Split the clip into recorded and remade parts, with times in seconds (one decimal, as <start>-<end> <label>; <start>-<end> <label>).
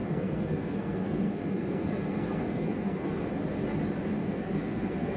0.0-3.1 remade; 3.1-4.2 recorded; 4.2-5.2 remade